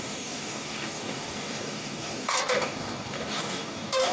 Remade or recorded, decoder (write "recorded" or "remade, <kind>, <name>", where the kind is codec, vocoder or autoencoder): remade, codec, DAC